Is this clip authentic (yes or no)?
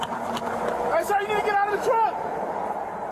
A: yes